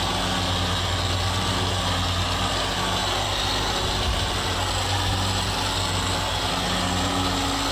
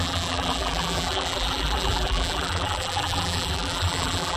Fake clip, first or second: second